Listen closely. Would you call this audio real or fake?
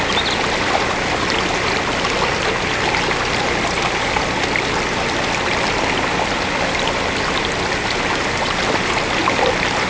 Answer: real